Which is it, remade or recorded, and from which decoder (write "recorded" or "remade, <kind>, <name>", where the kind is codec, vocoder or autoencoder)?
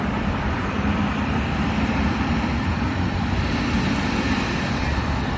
remade, vocoder, BigVGAN v2